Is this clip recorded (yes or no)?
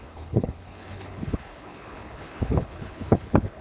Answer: no